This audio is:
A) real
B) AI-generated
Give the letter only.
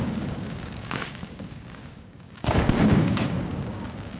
B